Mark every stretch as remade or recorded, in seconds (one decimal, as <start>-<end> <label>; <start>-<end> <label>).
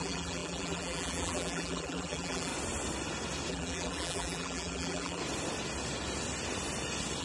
0.0-2.5 remade; 2.5-3.5 recorded; 3.5-5.2 remade; 5.2-7.2 recorded